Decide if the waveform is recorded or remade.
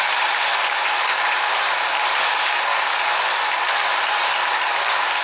recorded